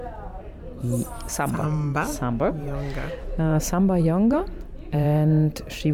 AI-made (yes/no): yes